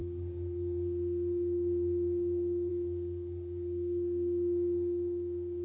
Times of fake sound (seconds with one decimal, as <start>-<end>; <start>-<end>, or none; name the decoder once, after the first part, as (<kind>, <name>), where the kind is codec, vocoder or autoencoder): 0.0-5.6 (codec, SNAC)

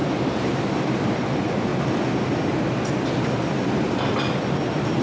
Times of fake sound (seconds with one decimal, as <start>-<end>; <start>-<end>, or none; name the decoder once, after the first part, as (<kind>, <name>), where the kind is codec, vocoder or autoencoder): 0.0-1.7 (vocoder, BigVGAN v2)